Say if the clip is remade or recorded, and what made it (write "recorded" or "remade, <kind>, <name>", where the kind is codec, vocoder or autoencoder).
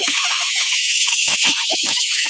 remade, autoencoder, DAC-VAE